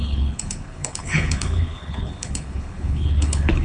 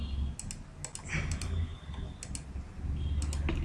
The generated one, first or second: first